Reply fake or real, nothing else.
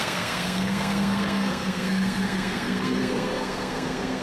fake